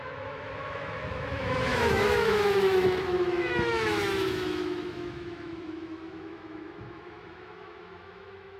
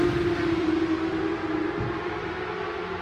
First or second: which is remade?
first